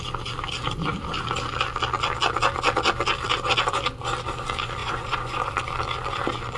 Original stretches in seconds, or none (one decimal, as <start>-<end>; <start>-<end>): 0.0-4.8; 5.5-6.6